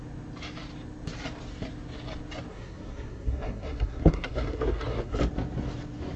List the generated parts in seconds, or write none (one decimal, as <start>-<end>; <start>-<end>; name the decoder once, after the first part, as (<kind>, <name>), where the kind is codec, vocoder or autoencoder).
2.5-5.2 (codec, SNAC)